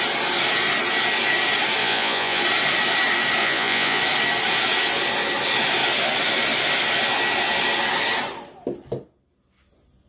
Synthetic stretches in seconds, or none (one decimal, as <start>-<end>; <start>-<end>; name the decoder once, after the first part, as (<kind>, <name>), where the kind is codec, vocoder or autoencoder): 1.8-2.4 (vocoder, Vocos); 3.4-4.0